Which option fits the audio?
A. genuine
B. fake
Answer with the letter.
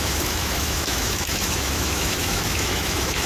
B